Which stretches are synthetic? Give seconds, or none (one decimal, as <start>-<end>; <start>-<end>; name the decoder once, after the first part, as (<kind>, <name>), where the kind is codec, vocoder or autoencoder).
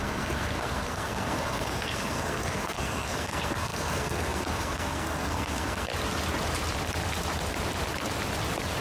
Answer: 0.0-5.9 (codec, SNAC)